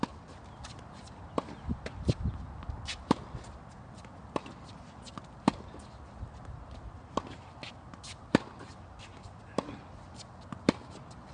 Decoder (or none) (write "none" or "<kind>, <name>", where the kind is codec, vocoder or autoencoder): none